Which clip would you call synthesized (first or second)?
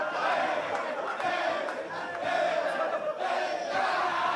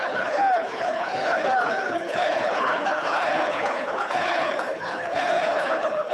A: second